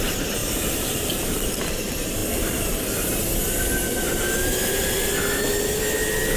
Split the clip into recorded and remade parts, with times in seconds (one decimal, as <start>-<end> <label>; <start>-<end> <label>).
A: 0.0-0.4 recorded; 0.4-1.6 remade; 1.6-6.4 recorded